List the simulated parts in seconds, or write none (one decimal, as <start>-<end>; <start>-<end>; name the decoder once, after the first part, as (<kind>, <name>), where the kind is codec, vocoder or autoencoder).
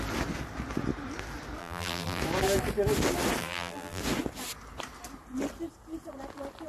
1.6-2.2 (vocoder, BigVGAN v2); 3.4-4.0